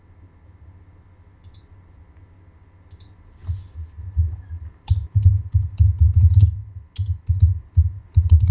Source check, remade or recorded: recorded